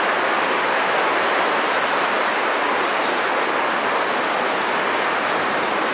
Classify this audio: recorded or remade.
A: recorded